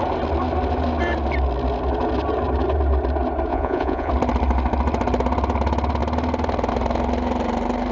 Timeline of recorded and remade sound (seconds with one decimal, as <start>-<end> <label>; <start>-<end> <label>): 0.0-3.5 recorded; 3.5-4.1 remade; 4.1-7.9 recorded